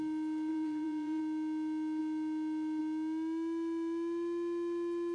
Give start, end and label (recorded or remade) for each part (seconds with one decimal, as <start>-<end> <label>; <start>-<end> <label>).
0.0-0.5 recorded; 0.5-1.2 remade; 1.2-5.1 recorded